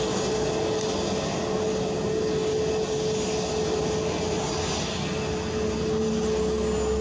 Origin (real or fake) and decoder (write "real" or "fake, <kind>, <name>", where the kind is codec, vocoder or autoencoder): real